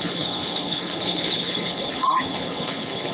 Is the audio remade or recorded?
remade